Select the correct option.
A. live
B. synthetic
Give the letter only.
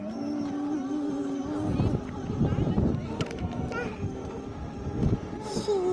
A